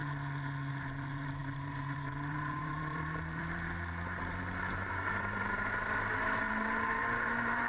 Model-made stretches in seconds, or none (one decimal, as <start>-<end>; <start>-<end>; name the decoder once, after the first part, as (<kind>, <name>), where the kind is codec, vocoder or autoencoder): 0.7-7.7 (vocoder, BigVGAN v2)